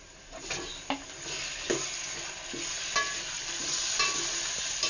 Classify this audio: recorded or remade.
recorded